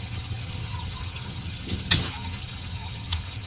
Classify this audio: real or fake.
fake